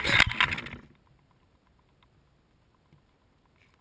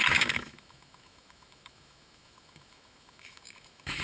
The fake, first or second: second